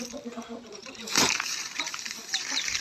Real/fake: fake